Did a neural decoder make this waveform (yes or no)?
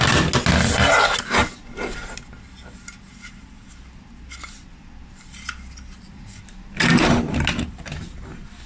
no